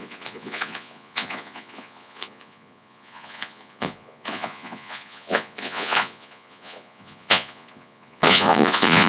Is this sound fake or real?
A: fake